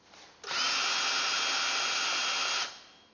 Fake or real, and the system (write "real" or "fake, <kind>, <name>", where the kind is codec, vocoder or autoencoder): real